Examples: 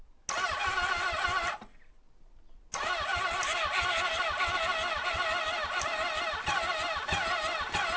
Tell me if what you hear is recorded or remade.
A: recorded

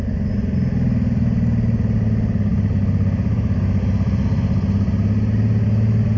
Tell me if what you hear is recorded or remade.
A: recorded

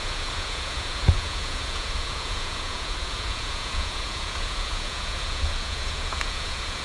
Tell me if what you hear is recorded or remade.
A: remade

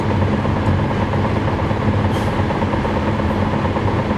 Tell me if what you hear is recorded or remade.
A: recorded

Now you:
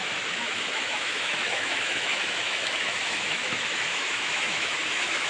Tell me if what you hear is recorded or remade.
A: remade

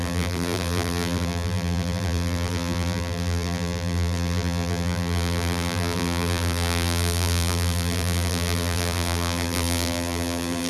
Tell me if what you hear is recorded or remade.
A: remade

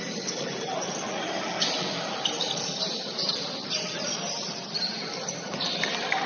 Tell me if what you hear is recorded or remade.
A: remade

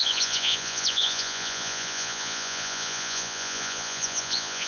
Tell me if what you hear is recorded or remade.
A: remade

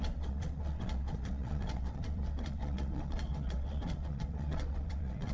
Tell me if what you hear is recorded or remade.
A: remade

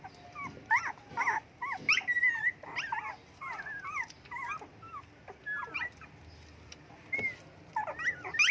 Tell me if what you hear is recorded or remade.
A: recorded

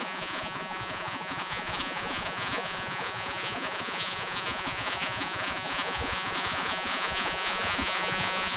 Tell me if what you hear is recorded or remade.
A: remade